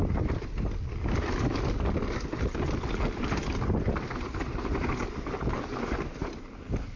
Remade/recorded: recorded